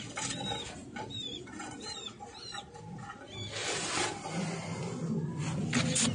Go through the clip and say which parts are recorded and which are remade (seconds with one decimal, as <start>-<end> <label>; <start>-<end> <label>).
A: 0.0-0.8 recorded; 0.8-2.8 remade; 2.8-3.6 recorded; 3.6-4.3 remade; 4.3-6.1 recorded